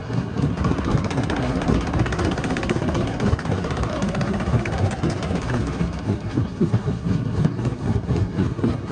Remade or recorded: remade